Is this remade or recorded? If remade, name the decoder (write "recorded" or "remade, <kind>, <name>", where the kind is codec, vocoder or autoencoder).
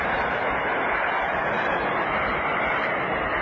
recorded